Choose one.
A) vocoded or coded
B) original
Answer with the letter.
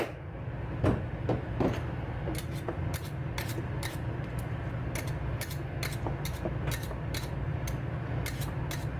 B